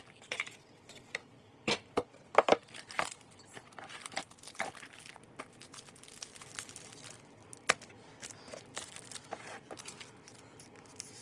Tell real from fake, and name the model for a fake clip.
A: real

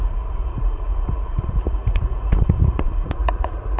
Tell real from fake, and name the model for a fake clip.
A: fake, vocoder, Vocos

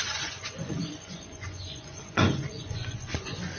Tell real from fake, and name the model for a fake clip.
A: fake, vocoder, Vocos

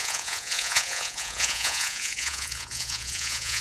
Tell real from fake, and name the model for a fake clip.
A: fake, vocoder, Vocos